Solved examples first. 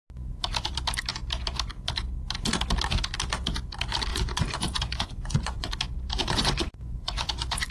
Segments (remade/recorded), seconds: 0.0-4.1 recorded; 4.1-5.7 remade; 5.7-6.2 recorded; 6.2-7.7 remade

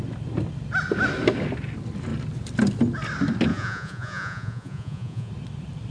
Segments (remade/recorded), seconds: 0.0-3.5 recorded; 3.5-5.3 remade; 5.3-5.9 recorded